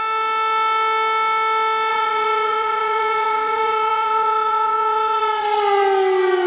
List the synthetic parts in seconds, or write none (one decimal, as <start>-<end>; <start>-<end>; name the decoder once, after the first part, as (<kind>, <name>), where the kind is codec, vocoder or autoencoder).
1.9-5.8 (vocoder, Vocos)